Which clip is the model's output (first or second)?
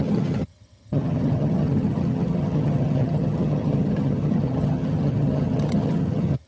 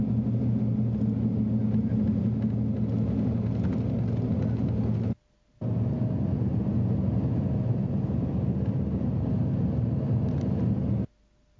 first